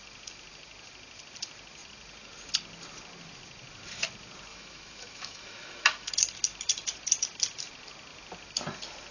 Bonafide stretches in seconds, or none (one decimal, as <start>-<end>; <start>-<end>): 0.0-4.5; 6.1-9.1